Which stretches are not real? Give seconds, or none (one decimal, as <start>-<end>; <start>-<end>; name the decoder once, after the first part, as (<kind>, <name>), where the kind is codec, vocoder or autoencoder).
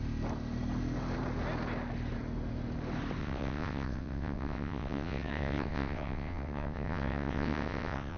3.2-8.2 (vocoder, WaveNeXt)